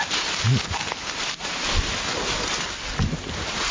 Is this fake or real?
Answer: real